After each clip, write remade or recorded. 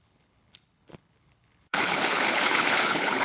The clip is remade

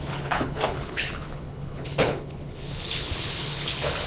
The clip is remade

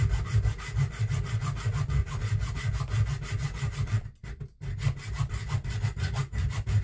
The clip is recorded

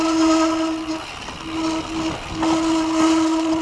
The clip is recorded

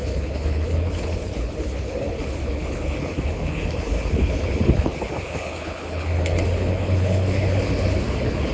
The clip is remade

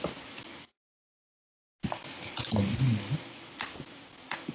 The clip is recorded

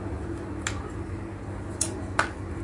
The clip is recorded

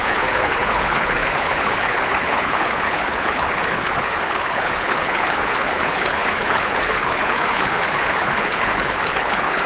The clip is remade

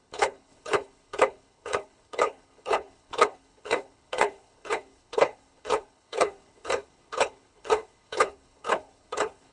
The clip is remade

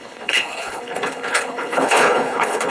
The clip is remade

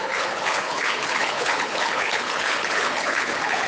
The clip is remade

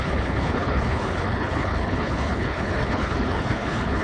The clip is remade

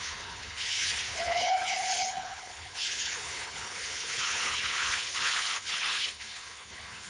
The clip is remade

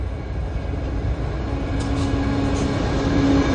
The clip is recorded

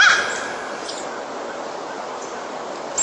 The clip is recorded